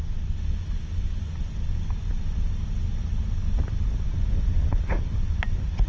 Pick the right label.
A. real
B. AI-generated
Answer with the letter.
A